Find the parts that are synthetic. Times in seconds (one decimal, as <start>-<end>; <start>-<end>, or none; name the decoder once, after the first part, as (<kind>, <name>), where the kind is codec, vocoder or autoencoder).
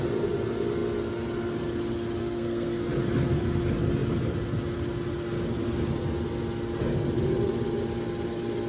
2.2-2.9 (codec, SNAC)